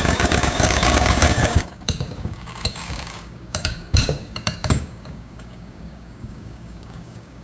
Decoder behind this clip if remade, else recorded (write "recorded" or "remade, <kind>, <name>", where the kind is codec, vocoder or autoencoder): remade, codec, DAC